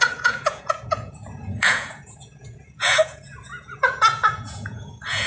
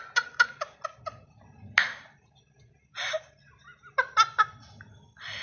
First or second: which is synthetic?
first